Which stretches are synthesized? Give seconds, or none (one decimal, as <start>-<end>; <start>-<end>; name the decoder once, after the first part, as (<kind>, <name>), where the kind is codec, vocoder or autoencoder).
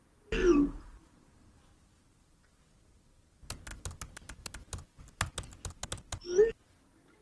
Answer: none